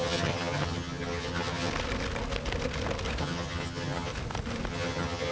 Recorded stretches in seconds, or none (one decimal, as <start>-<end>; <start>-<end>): 1.7-3.2; 4.1-4.7